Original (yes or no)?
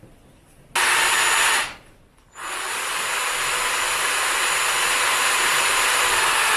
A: yes